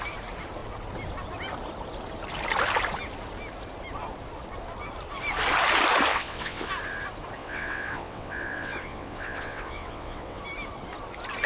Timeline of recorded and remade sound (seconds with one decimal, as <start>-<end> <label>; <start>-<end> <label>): 0.0-6.1 recorded; 6.1-6.7 remade; 6.7-7.4 recorded; 7.4-10.4 remade; 10.4-11.5 recorded